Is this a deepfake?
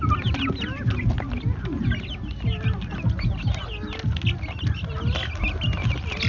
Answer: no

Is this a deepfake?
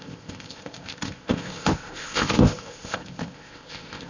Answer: yes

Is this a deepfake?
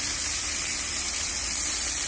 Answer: no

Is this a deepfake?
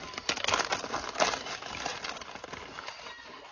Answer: no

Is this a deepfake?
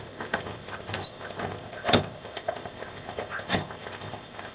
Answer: yes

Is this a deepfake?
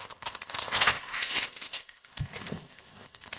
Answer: yes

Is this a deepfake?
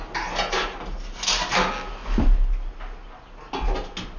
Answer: no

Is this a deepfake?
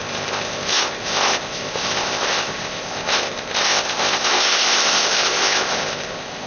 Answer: yes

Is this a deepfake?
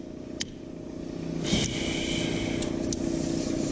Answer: no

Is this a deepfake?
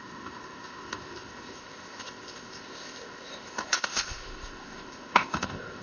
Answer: yes